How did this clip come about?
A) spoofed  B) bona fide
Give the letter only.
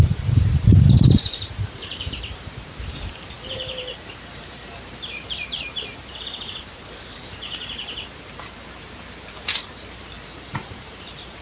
A